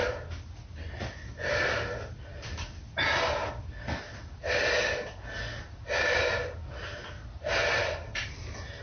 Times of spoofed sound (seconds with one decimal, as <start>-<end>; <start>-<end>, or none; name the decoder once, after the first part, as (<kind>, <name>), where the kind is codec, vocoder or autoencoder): none